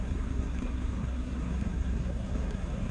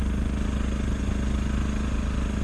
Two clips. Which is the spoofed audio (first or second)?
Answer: first